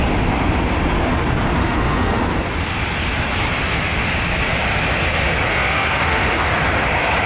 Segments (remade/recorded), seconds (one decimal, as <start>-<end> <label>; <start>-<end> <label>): 0.0-1.6 recorded; 1.6-2.2 remade; 2.2-5.5 recorded; 5.5-6.5 remade; 6.5-7.3 recorded